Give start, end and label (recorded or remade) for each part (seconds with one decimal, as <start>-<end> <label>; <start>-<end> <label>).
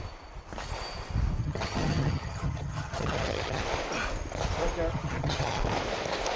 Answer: 0.0-1.4 recorded; 1.4-3.6 remade; 3.6-4.9 recorded; 4.9-5.6 remade; 5.6-6.4 recorded